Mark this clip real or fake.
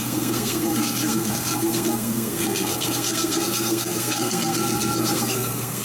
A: fake